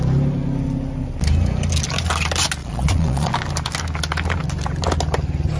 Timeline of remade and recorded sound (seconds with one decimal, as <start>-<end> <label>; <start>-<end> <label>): 0.0-2.6 recorded; 2.6-3.3 remade; 3.3-5.6 recorded

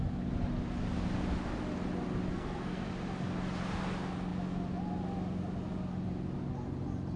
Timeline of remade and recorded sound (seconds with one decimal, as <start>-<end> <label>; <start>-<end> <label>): 0.0-2.3 recorded; 2.3-2.9 remade; 2.9-7.2 recorded

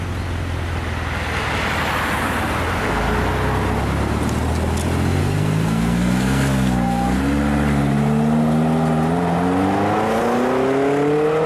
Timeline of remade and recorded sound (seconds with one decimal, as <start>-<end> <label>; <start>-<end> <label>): 0.0-5.2 recorded; 5.2-7.2 remade; 7.2-11.5 recorded

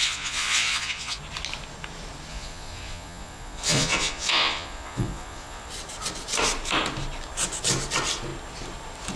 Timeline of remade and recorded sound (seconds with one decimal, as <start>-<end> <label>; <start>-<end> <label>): 0.0-1.2 remade; 1.2-2.3 recorded; 2.3-5.7 remade; 5.7-9.2 recorded

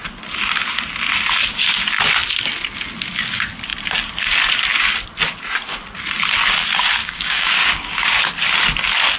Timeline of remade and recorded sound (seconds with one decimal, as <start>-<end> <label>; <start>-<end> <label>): 0.0-7.0 recorded; 7.0-8.2 remade; 8.2-9.2 recorded